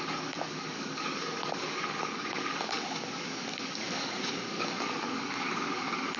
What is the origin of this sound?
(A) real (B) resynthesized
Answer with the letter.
B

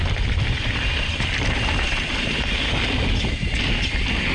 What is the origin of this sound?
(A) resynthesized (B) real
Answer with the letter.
B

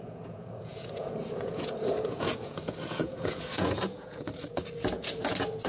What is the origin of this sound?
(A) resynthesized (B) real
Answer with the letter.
A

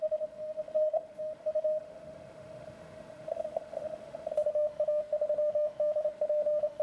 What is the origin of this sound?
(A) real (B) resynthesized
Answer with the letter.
B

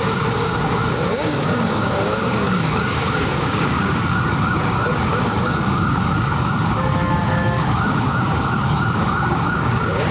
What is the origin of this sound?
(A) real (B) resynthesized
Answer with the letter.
B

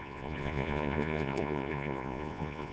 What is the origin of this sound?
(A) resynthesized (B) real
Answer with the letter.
A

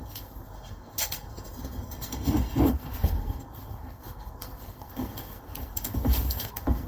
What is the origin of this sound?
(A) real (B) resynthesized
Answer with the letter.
B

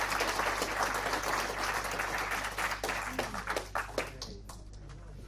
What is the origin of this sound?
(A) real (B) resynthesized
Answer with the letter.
A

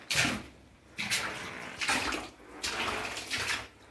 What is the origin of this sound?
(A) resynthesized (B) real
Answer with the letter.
B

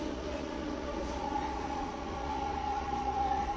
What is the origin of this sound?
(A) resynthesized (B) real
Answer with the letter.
A